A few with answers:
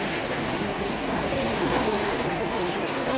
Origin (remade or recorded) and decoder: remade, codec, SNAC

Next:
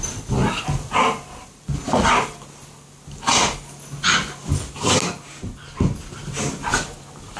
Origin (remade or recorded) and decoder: recorded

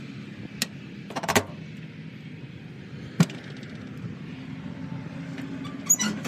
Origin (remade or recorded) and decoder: recorded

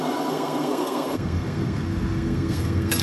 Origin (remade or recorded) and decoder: remade, codec, SNAC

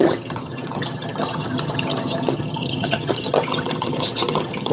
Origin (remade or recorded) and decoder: remade, vocoder, HiFi-GAN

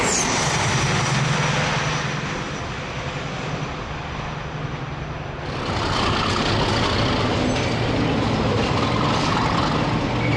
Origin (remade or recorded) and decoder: recorded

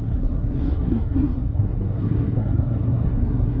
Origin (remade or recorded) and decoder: remade, codec, SNAC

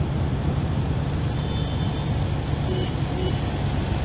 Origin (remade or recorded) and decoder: recorded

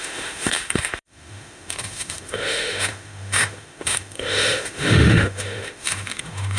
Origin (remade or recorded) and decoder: remade, autoencoder, DAC-VAE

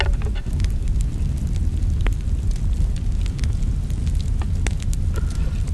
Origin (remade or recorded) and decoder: recorded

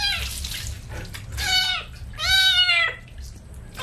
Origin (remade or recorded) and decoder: recorded